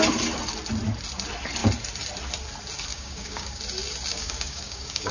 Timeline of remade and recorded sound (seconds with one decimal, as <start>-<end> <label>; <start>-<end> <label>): 0.0-2.9 recorded; 2.9-3.6 remade; 3.6-4.1 recorded; 4.1-5.1 remade